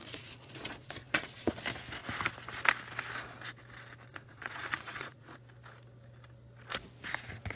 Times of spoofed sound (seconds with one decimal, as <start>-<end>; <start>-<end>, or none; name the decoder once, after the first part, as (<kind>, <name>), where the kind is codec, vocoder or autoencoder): 0.0-1.5 (vocoder, Vocos); 4.1-5.4